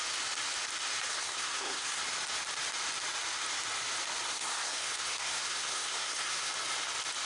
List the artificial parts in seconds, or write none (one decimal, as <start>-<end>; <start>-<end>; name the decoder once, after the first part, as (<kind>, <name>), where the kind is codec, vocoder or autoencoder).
1.1-2.0 (codec, SNAC); 4.3-6.5